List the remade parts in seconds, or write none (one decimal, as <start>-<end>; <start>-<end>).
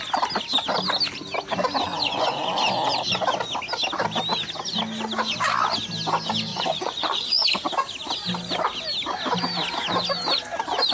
1.9-2.5; 6.5-7.5